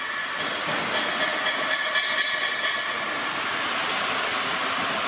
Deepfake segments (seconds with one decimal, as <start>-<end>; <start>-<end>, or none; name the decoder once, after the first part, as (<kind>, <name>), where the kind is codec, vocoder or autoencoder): none